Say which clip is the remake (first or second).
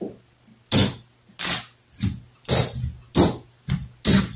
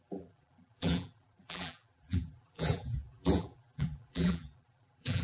second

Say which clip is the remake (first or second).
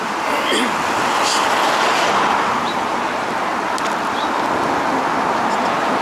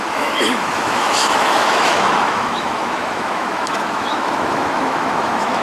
second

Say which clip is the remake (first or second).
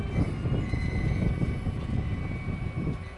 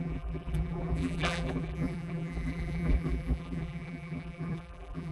second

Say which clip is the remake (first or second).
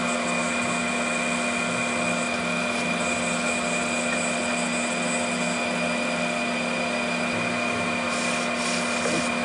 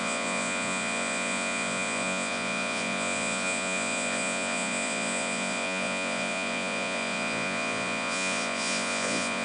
second